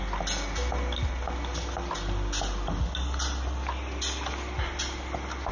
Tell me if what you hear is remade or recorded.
recorded